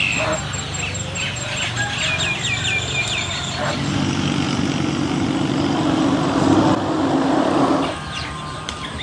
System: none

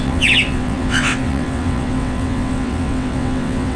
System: vocoder, WaveNeXt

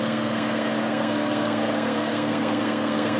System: codec, SNAC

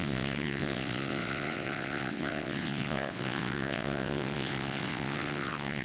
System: vocoder, WaveNeXt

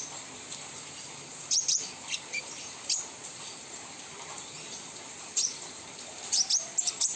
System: vocoder, BigVGAN v2